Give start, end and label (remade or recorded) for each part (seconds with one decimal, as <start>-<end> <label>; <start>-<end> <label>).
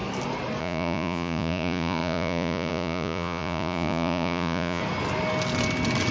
0.0-0.6 recorded; 0.6-4.8 remade; 4.8-6.1 recorded